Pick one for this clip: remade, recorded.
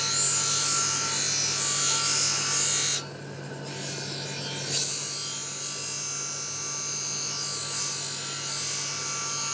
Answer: recorded